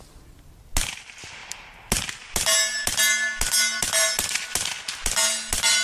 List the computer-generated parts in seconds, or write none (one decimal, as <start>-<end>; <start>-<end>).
none